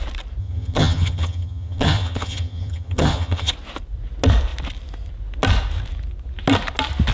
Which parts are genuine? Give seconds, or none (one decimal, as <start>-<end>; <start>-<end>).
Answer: 0.0-0.4; 3.5-7.1